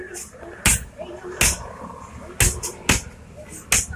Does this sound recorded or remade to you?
recorded